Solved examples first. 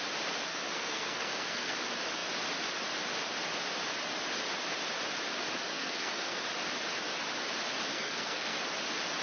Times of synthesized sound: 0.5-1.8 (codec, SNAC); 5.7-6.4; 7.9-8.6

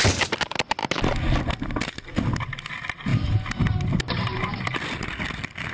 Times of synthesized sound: none

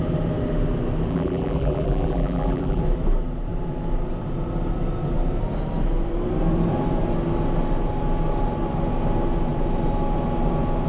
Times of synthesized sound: 1.1-2.8 (vocoder, BigVGAN v2)

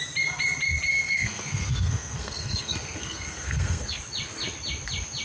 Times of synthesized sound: 0.9-4.0 (codec, SNAC)

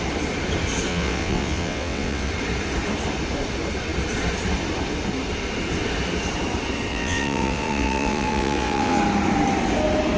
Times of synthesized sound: 0.9-2.3 (vocoder, WaveNeXt); 6.9-9.0

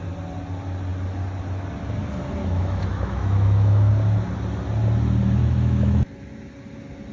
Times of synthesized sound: 2.4-3.9 (autoencoder, DAC-VAE); 5.4-6.1

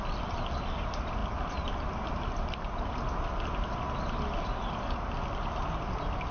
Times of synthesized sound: none

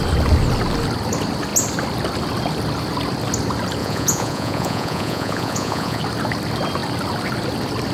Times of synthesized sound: 3.8-6.0 (vocoder, Vocos)